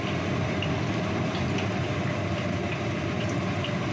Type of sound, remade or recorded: recorded